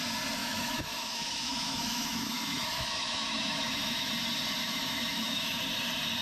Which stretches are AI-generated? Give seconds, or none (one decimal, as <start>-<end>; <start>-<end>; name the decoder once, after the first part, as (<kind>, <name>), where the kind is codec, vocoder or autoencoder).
0.4-4.1 (autoencoder, DAC-VAE); 4.6-5.6